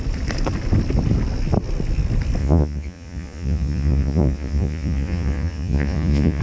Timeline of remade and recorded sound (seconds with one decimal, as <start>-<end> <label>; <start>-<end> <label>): 0.0-2.4 recorded; 2.4-6.4 remade